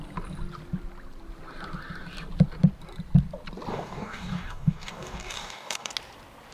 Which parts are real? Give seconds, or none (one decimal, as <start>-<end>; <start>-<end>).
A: 0.0-3.7; 5.9-6.5